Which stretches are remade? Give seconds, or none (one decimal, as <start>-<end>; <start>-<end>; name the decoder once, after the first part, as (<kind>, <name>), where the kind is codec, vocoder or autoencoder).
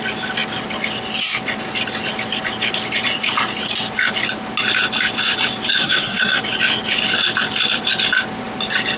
5.8-6.4 (codec, SNAC)